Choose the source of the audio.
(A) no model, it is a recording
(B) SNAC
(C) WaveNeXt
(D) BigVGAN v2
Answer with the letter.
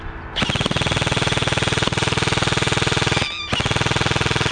A